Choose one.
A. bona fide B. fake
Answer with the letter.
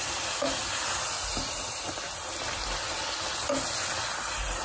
A